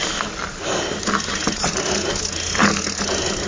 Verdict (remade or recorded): recorded